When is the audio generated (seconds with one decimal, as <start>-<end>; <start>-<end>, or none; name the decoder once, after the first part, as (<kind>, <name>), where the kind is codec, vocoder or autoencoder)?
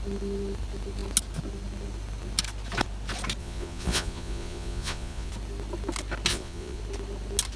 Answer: 3.4-5.3 (vocoder, Vocos); 6.3-6.8